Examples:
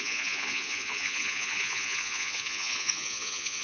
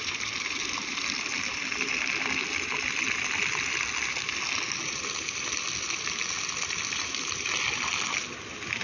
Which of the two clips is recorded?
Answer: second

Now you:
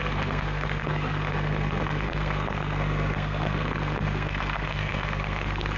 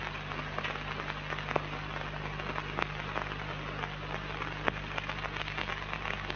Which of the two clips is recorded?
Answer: second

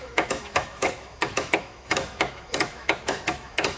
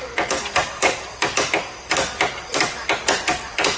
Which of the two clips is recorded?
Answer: second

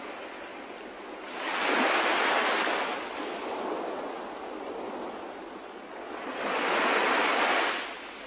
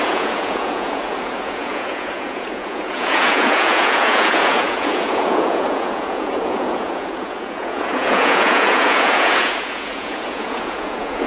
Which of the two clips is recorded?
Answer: first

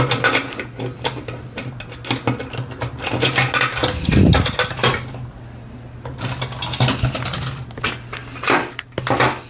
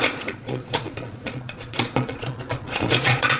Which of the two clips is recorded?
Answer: first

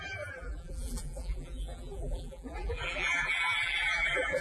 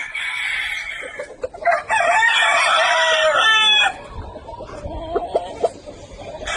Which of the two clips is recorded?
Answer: second